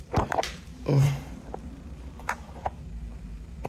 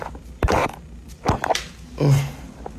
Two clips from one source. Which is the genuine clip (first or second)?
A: second